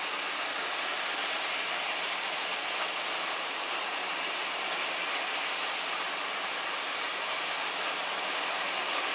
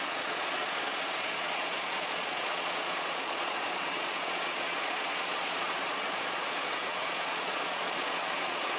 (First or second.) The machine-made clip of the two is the second